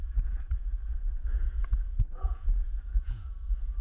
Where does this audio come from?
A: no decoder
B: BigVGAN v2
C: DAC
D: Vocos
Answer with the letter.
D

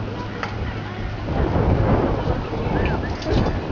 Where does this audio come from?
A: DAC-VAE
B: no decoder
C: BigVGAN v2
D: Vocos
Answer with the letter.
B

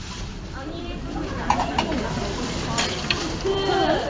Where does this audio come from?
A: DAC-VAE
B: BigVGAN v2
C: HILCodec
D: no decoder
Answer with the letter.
B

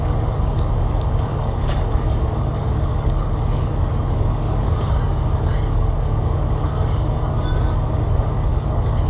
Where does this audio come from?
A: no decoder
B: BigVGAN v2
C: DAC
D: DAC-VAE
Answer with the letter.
C